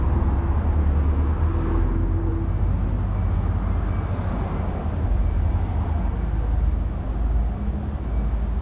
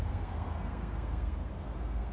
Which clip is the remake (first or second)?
second